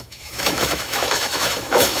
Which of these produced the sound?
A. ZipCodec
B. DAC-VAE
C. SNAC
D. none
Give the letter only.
B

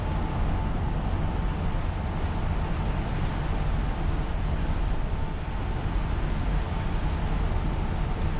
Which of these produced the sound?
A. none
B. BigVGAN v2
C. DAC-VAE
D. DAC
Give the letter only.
A